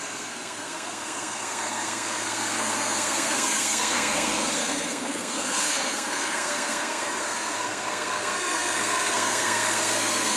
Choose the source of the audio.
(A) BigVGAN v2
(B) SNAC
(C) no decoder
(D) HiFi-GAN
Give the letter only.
B